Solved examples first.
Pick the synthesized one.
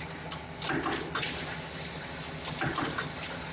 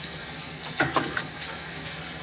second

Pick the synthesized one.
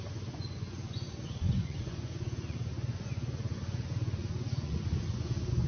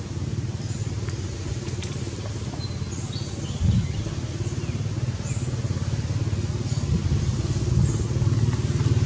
first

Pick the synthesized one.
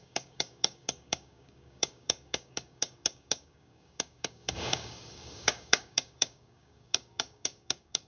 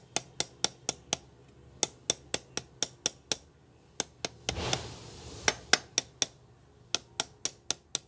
first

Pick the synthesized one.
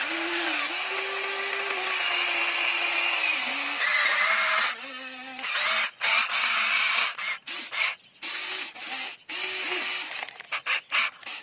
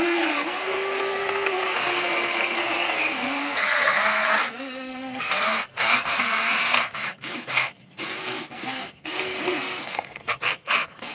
second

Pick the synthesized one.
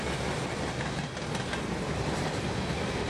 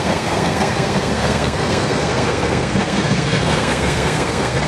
second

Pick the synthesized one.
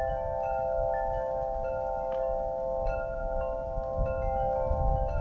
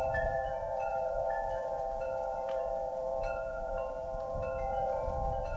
second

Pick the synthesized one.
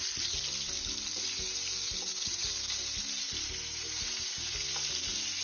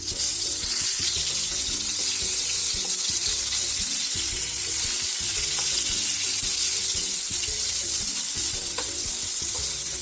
second